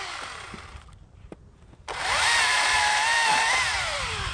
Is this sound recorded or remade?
remade